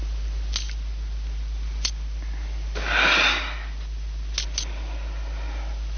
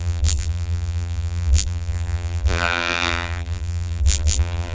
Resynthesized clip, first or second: second